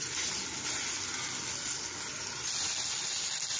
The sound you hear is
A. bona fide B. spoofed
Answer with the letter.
A